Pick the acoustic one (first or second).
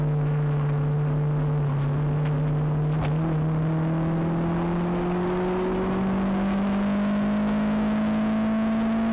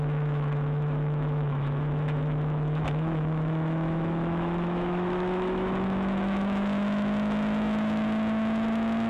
first